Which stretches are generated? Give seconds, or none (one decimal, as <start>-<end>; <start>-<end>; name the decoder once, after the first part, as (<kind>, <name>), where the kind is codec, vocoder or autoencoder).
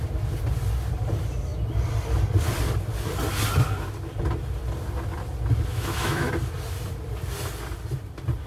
5.7-6.3 (autoencoder, DAC-VAE)